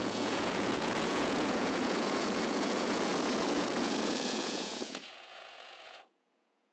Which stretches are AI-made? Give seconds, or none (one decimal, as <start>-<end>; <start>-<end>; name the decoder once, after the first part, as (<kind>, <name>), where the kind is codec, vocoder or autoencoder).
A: 0.0-6.7 (vocoder, Vocos)